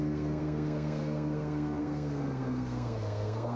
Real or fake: fake